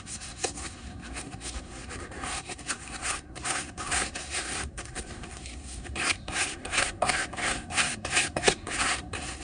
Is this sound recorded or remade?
remade